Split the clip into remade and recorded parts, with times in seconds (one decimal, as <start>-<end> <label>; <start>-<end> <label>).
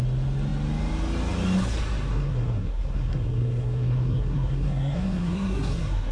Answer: 0.0-2.1 recorded; 2.1-6.1 remade